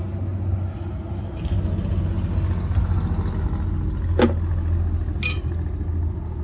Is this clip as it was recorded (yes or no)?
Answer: yes